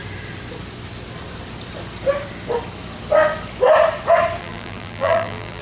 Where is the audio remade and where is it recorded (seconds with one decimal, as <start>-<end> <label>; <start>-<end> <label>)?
0.0-4.4 recorded; 4.4-5.6 remade